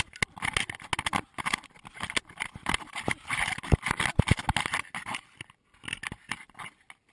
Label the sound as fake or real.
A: real